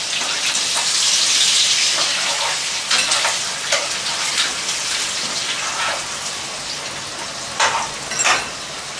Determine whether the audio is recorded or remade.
recorded